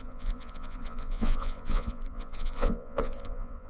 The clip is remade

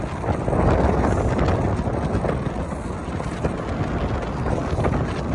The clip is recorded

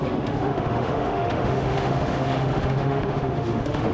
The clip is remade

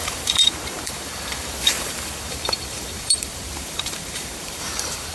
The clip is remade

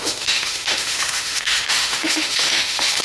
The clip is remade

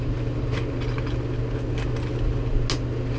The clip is recorded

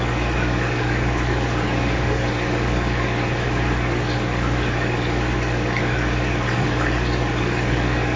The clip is remade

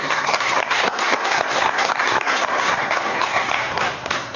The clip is remade